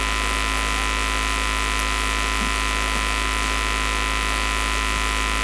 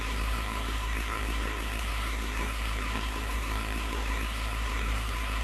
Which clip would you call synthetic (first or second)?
second